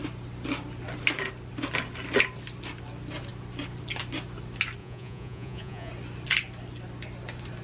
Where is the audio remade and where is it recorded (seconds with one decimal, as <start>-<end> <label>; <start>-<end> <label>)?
0.0-4.8 recorded; 4.8-5.9 remade; 5.9-7.6 recorded